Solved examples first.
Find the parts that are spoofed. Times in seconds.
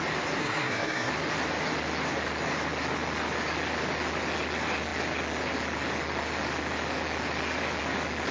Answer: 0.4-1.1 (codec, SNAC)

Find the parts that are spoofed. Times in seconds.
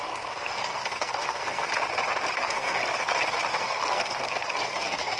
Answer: 0.0-1.7 (codec, SNAC); 2.4-2.8; 3.5-5.2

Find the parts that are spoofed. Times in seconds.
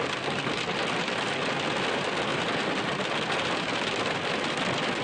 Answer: none